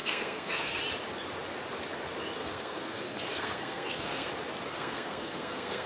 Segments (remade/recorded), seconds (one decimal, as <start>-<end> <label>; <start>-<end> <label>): 0.0-0.8 remade; 0.8-2.4 recorded; 2.4-4.3 remade; 4.3-4.7 recorded; 4.7-5.9 remade